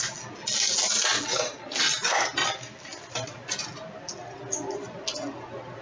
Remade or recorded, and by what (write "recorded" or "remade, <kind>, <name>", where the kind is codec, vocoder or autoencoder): recorded